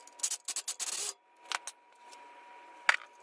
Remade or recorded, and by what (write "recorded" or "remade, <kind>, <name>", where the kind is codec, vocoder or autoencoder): recorded